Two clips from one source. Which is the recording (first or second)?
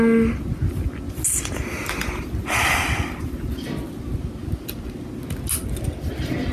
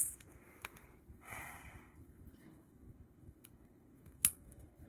first